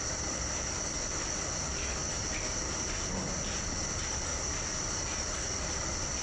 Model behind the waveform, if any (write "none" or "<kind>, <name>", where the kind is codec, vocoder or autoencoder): none